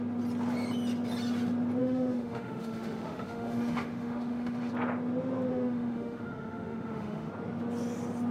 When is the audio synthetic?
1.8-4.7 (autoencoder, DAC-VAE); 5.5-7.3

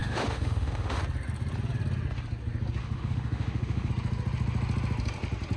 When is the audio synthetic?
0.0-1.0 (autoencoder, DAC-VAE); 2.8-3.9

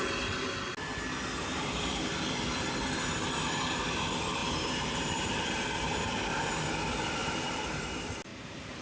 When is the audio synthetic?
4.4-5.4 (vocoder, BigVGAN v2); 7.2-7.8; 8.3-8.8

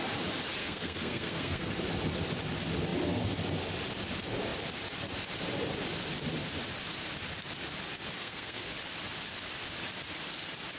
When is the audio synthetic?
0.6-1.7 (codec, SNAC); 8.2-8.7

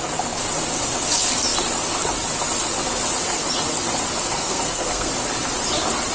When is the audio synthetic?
4.2-5.1 (codec, SNAC)

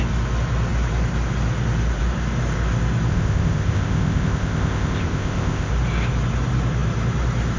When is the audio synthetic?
3.1-5.7 (codec, ZipCodec)

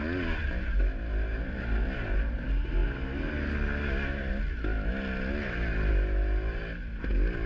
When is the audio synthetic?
none

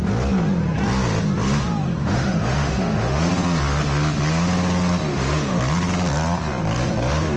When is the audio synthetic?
2.0-3.3 (autoencoder, DAC-VAE); 5.1-5.6